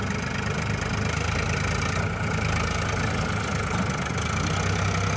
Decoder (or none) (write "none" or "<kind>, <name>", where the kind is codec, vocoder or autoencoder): none